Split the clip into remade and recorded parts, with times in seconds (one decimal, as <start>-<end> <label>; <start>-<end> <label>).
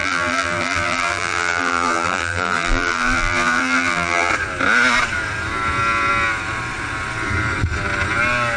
0.0-4.3 remade; 4.3-8.6 recorded